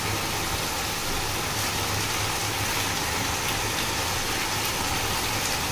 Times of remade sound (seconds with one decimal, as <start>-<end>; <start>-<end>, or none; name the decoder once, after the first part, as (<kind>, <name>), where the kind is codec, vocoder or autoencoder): none